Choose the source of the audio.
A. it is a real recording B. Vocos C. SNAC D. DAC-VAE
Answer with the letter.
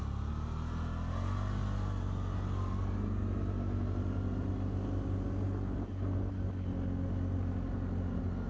A